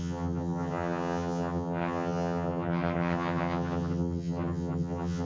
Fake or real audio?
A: fake